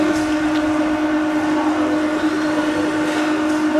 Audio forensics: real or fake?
real